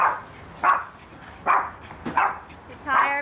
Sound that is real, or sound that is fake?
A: real